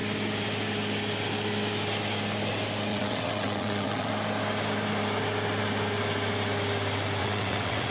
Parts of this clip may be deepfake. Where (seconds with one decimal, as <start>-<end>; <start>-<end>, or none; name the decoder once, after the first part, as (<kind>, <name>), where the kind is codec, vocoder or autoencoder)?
2.9-4.1 (vocoder, WaveNeXt); 7.2-7.9